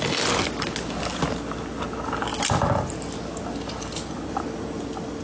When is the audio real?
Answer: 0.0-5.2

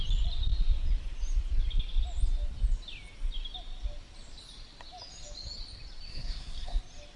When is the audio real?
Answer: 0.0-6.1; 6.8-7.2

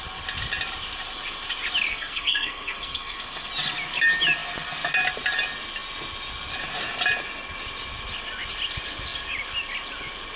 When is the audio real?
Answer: 0.0-1.9; 3.5-10.4

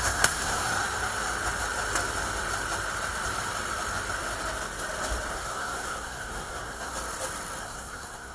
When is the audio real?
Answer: 0.6-5.3; 6.9-7.6

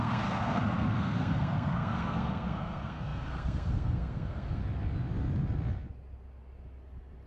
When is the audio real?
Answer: 4.6-7.3

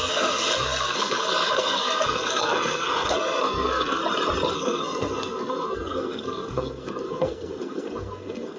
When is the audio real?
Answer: 4.0-4.5

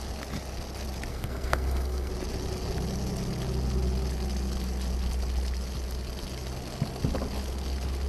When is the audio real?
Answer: 0.0-1.1; 2.1-8.1